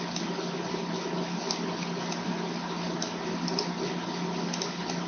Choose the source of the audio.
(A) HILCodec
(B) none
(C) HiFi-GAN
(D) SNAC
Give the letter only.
B